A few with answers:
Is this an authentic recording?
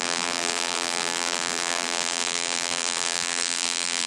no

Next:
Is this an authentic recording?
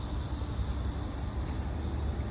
yes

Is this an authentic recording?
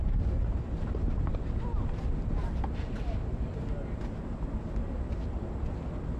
yes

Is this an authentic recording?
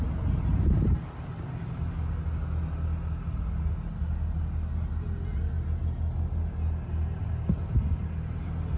yes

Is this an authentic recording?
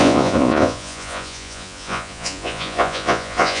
no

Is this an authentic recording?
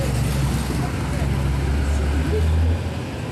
yes